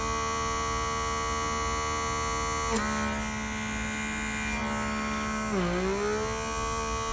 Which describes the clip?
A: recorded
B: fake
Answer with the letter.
A